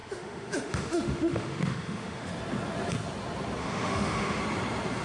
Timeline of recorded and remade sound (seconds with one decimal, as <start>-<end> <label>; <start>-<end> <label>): 0.0-2.3 remade; 2.3-3.6 recorded; 3.6-4.4 remade; 4.4-5.0 recorded